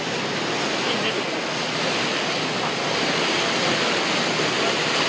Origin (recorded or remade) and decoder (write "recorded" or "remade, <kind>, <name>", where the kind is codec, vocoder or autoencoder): recorded